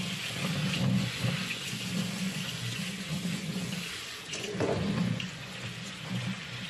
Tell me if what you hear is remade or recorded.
remade